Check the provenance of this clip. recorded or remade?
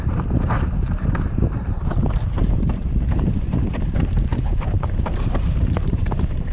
remade